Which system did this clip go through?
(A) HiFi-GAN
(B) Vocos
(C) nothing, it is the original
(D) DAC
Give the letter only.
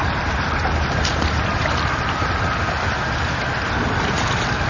C